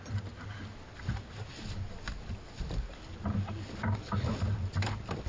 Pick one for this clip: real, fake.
real